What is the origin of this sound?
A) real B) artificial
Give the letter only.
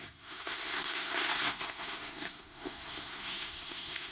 B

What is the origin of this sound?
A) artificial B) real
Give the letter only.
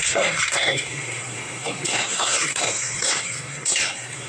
A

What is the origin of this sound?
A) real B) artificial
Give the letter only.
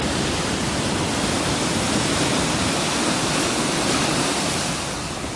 A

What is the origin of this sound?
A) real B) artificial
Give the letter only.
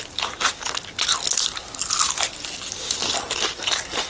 A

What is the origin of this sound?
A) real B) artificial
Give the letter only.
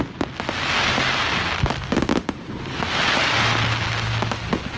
A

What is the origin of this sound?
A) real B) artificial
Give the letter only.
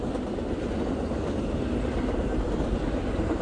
A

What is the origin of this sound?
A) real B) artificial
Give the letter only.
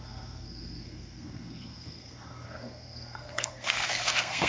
B